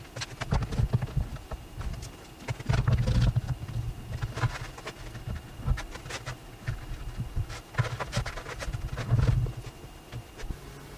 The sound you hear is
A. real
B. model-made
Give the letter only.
A